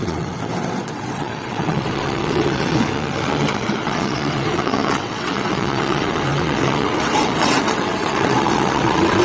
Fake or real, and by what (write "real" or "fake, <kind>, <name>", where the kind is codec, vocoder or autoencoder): fake, vocoder, WaveNeXt